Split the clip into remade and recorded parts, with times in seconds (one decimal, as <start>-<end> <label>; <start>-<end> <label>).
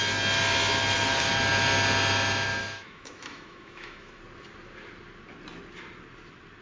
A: 0.0-2.6 recorded; 2.6-4.2 remade; 4.2-6.6 recorded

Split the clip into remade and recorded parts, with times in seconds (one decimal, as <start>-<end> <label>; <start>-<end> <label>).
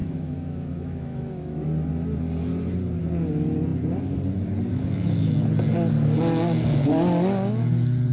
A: 0.0-1.6 remade; 1.6-4.7 recorded; 4.7-5.3 remade; 5.3-8.1 recorded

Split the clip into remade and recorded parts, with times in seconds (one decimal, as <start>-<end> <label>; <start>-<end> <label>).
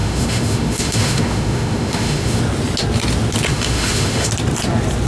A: 0.0-2.4 remade; 2.4-3.5 recorded; 3.5-4.3 remade; 4.3-5.1 recorded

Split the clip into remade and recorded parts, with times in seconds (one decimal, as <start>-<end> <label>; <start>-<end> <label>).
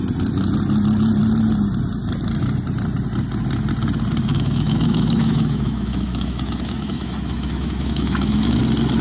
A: 0.0-4.3 recorded; 4.3-8.6 remade; 8.6-9.0 recorded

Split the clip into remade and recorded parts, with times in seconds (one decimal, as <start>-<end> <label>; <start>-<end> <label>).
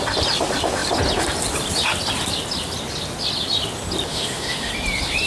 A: 0.0-4.1 recorded; 4.1-4.7 remade; 4.7-5.3 recorded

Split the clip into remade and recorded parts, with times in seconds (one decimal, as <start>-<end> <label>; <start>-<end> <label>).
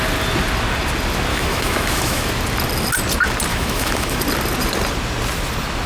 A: 0.0-1.3 recorded; 1.3-2.3 remade; 2.3-3.5 recorded; 3.5-4.2 remade; 4.2-5.9 recorded